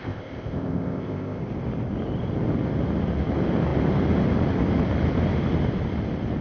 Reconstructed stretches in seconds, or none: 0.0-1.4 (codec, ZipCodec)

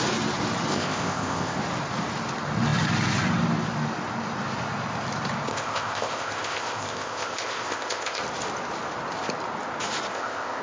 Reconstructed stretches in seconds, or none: 0.7-1.6 (codec, ZipCodec); 5.5-8.2; 10.1-10.6

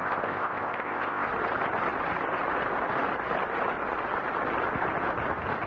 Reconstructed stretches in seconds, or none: 0.0-1.3 (codec, ZipCodec)

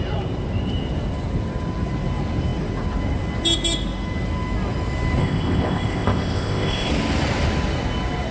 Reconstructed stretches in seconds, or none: 5.2-6.9 (codec, ZipCodec)